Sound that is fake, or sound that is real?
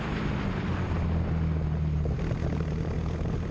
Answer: real